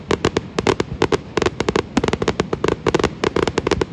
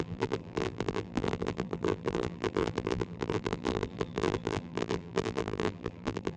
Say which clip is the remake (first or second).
second